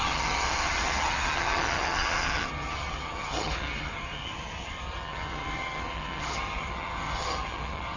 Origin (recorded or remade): remade